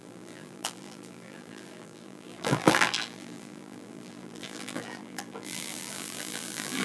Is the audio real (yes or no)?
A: no